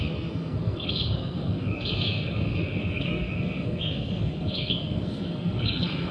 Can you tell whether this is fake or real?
fake